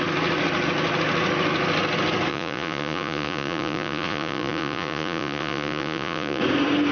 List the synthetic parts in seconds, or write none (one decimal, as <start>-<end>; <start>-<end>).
2.3-6.4